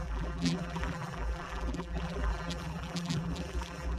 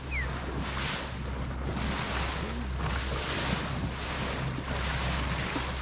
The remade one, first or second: first